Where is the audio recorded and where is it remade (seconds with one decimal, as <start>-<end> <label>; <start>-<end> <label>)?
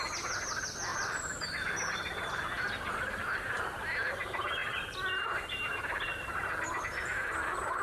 0.0-0.9 recorded; 0.9-2.4 remade; 2.4-7.8 recorded